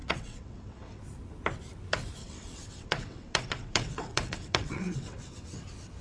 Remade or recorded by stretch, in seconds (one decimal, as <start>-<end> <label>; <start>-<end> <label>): 0.0-1.0 remade; 1.0-2.2 recorded; 2.2-5.6 remade; 5.6-6.0 recorded